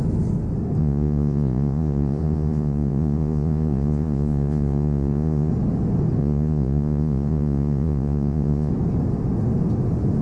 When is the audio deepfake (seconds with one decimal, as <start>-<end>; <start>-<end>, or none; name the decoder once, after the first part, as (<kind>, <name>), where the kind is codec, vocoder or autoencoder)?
0.8-5.5 (vocoder, Vocos); 6.2-8.7